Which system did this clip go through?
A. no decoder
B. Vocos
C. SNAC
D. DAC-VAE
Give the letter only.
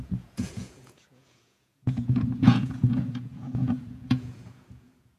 B